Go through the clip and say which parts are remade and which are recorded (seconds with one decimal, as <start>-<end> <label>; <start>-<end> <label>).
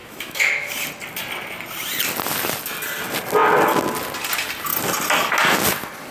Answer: 0.0-0.7 remade; 0.7-6.1 recorded